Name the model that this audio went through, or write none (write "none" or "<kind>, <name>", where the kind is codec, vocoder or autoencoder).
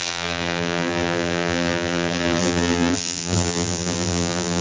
vocoder, BigVGAN v2